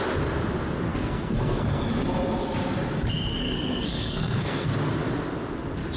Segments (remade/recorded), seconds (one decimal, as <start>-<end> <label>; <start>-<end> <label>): 0.0-0.9 recorded; 0.9-1.9 remade; 1.9-3.3 recorded; 3.3-4.7 remade; 4.7-6.0 recorded